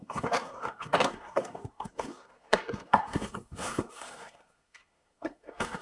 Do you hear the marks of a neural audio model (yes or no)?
yes